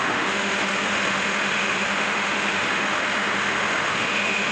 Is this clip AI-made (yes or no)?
yes